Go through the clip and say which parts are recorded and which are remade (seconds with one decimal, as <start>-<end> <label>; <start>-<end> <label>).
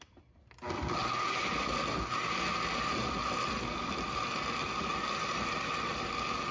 0.0-6.5 recorded